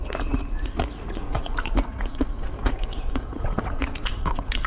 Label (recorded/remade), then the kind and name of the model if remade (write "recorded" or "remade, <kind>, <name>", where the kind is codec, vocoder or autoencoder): remade, vocoder, Vocos